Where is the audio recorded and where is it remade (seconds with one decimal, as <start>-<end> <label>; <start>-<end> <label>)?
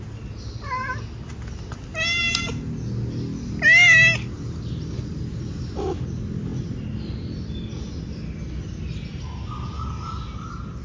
0.0-10.8 recorded